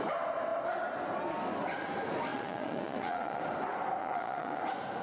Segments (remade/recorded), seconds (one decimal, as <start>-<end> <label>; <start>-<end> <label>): 0.0-2.3 recorded; 2.3-3.4 remade; 3.4-4.0 recorded; 4.0-4.6 remade; 4.6-5.0 recorded